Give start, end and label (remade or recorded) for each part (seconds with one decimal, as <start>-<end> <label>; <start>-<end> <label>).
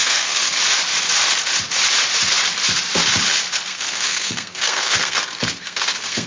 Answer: 0.0-0.6 remade; 0.6-3.7 recorded; 3.7-6.3 remade